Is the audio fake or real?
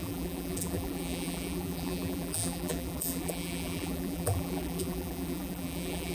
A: fake